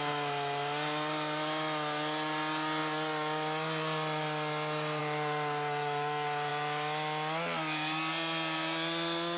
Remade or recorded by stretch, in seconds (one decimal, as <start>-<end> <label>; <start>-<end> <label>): 0.0-9.4 recorded